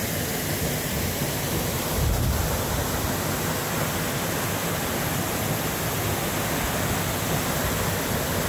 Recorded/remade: recorded